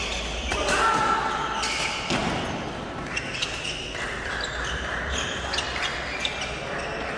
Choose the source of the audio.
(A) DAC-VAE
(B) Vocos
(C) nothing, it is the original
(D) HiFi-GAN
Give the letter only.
C